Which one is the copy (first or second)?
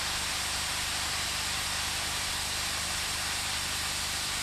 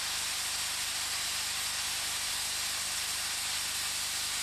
first